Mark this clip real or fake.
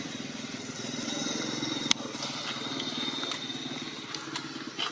real